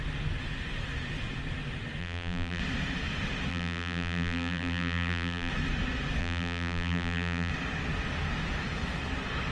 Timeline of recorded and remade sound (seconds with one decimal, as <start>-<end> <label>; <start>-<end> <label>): 0.0-2.0 recorded; 2.0-2.6 remade; 2.6-3.5 recorded; 3.5-5.5 remade; 5.5-6.2 recorded; 6.2-7.5 remade; 7.5-9.5 recorded